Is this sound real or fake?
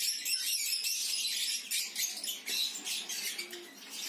real